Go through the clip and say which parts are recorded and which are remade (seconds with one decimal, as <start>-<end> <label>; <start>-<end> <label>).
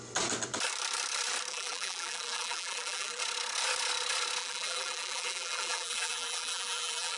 0.0-1.5 recorded; 1.5-3.2 remade; 3.2-4.4 recorded; 4.4-7.2 remade